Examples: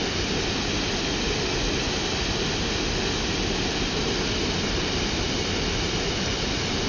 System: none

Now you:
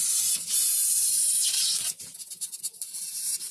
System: vocoder, BigVGAN v2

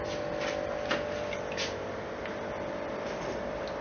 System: vocoder, BigVGAN v2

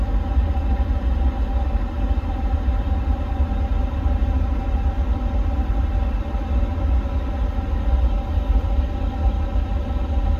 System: none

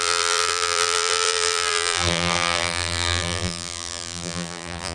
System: vocoder, BigVGAN v2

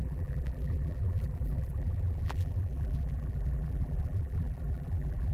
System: vocoder, BigVGAN v2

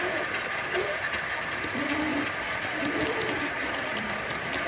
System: vocoder, BigVGAN v2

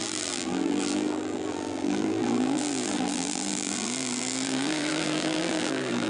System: vocoder, BigVGAN v2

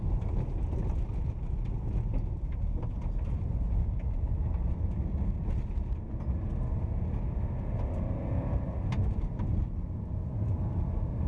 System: none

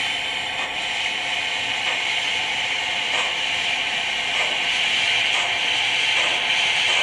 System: vocoder, BigVGAN v2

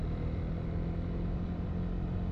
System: vocoder, BigVGAN v2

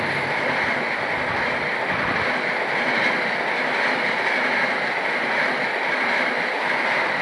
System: none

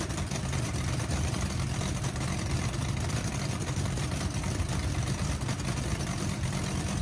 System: vocoder, BigVGAN v2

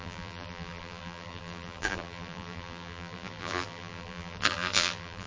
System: vocoder, BigVGAN v2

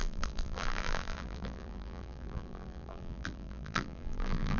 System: vocoder, BigVGAN v2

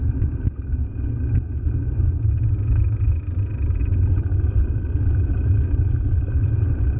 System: none